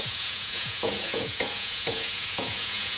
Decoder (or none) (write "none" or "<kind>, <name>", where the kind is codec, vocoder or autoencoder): vocoder, Vocos